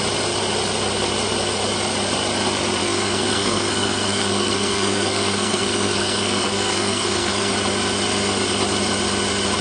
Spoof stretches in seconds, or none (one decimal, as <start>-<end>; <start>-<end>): 2.8-7.5